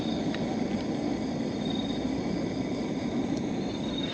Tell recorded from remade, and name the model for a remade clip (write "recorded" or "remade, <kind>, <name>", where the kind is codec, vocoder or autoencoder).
recorded